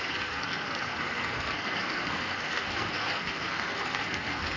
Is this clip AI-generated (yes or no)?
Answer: yes